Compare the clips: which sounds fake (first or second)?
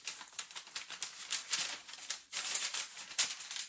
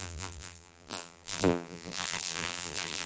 second